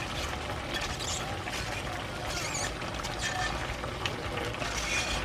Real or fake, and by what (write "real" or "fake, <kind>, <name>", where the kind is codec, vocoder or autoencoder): real